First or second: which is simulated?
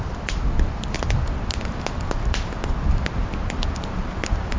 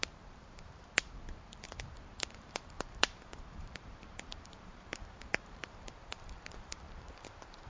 second